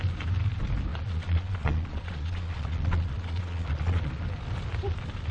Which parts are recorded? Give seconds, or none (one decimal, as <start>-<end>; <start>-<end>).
0.0-0.9; 4.1-5.3